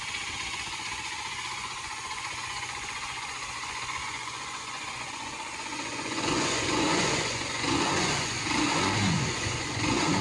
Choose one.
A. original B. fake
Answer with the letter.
B